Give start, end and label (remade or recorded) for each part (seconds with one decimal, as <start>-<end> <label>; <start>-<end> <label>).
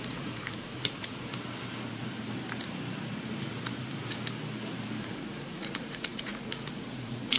0.0-1.3 remade; 1.3-5.0 recorded; 5.0-7.4 remade